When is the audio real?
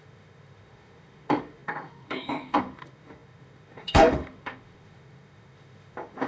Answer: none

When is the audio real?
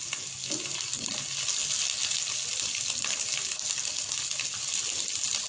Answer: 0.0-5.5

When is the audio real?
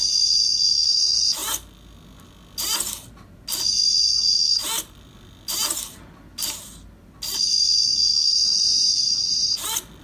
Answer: 0.0-10.0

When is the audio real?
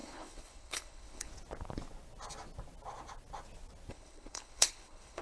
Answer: 1.3-3.9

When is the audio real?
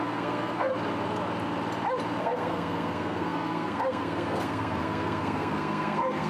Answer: 0.7-2.2